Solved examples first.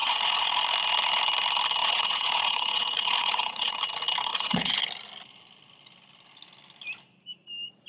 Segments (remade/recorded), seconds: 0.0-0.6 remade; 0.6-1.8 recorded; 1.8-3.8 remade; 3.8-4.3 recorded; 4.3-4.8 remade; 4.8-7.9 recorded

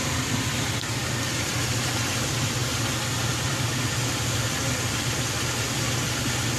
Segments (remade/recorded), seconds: 0.0-1.0 recorded; 1.0-1.5 remade; 1.5-2.6 recorded; 2.6-5.0 remade; 5.0-6.6 recorded